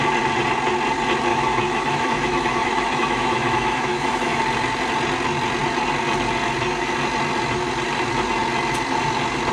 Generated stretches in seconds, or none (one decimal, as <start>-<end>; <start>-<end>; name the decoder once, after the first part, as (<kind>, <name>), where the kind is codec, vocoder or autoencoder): 1.3-4.4 (autoencoder, DAC-VAE)